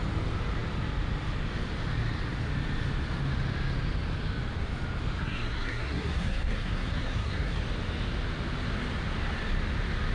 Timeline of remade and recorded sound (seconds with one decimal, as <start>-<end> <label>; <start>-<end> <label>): 0.0-5.2 recorded; 5.2-7.6 remade; 7.6-10.1 recorded